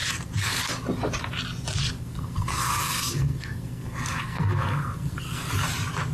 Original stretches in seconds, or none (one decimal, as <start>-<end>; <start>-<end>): 0.7-1.8; 5.5-6.1